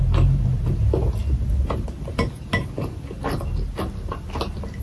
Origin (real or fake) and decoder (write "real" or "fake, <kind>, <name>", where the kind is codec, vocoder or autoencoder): real